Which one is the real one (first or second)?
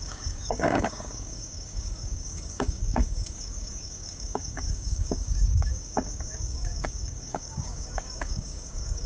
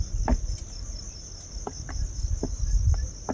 second